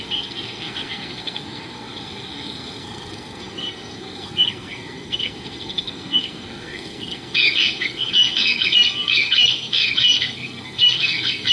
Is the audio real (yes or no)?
no